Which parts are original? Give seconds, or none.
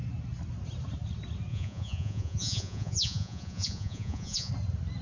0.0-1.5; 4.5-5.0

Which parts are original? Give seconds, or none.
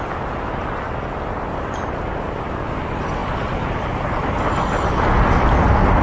0.0-3.2; 3.7-6.0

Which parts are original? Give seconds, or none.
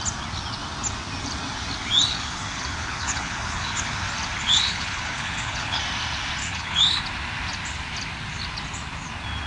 0.0-2.1; 4.0-4.4; 5.8-6.4; 7.0-9.5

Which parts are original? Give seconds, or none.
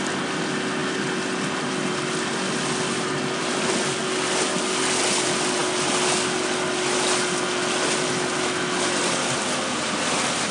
0.0-10.5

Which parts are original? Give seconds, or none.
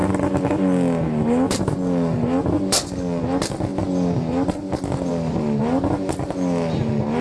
0.0-7.2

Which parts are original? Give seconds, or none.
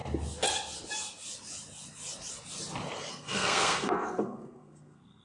0.0-3.1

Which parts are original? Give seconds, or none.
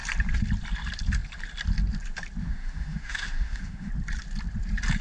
0.0-2.4; 3.9-5.0